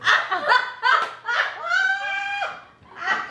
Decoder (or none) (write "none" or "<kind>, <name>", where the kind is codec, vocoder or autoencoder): none